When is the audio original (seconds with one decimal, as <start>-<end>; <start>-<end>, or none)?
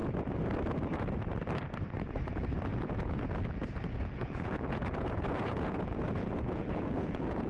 0.0-2.7